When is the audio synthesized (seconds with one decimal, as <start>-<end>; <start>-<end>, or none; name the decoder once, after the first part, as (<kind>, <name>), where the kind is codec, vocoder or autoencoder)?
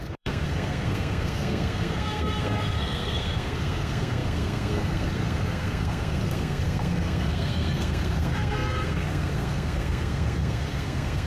0.0-11.3 (codec, SNAC)